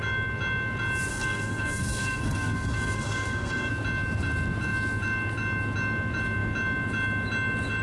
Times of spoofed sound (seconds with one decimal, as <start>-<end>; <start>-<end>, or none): 1.1-3.7

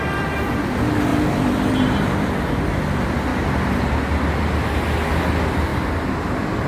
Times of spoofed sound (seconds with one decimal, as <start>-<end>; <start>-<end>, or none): 1.1-2.8

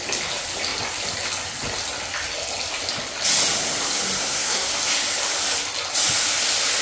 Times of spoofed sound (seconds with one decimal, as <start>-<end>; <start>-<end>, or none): 4.2-4.7

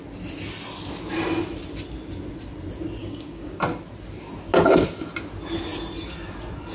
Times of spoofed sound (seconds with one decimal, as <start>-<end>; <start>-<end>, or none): 3.0-3.6